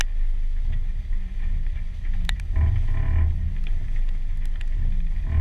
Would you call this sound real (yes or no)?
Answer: yes